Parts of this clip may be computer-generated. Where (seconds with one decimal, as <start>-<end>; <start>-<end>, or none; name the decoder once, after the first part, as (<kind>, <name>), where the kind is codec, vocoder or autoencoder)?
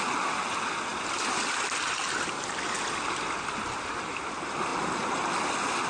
none